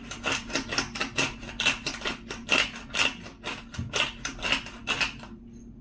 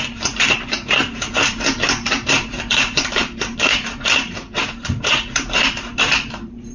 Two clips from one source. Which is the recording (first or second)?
first